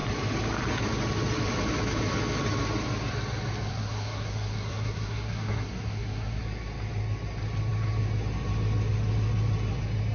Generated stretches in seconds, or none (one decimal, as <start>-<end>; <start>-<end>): 3.7-6.4